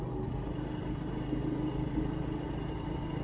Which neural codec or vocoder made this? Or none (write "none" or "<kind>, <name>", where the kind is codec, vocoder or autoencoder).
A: none